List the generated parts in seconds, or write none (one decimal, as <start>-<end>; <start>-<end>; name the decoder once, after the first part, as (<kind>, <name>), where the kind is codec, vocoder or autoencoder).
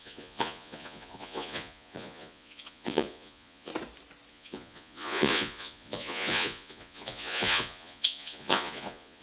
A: 0.0-3.7 (vocoder, Vocos); 4.3-9.2